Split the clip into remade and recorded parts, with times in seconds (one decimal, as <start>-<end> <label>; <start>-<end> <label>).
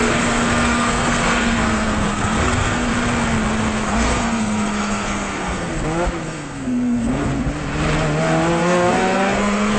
0.0-2.9 remade; 2.9-3.9 recorded; 3.9-5.7 remade; 5.7-6.2 recorded; 6.2-7.3 remade; 7.3-8.6 recorded; 8.6-9.8 remade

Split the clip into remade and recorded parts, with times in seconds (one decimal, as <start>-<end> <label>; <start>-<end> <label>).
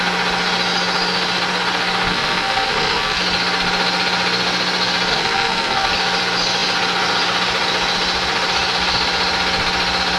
0.0-2.1 recorded; 2.1-3.2 remade; 3.2-5.1 recorded; 5.1-5.9 remade; 5.9-10.2 recorded